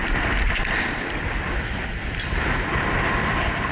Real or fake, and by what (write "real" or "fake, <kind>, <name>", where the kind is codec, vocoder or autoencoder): real